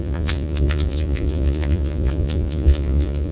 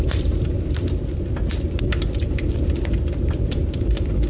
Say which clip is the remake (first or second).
first